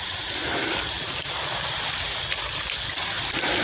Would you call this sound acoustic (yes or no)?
yes